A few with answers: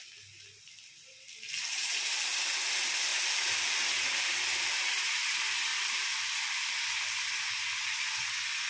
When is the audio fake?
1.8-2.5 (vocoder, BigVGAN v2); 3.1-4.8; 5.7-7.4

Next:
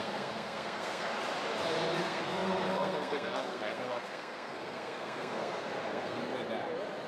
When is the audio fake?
0.0-1.1 (codec, SNAC); 2.0-6.2

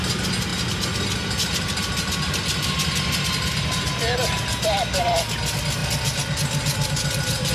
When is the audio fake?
none

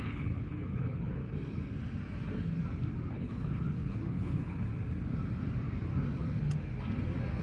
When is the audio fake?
0.0-1.2 (codec, HILCodec); 3.1-4.7

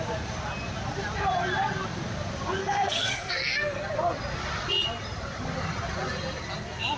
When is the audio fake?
2.6-3.8 (codec, SNAC)

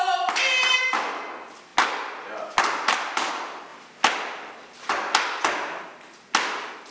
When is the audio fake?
none